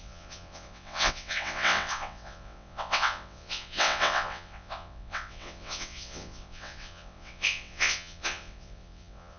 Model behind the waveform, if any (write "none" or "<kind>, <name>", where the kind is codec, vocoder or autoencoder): vocoder, WaveNeXt